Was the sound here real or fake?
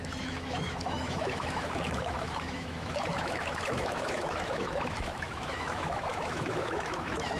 fake